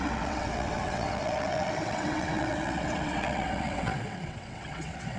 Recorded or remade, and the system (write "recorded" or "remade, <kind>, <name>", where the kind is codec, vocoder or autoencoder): remade, vocoder, WaveNeXt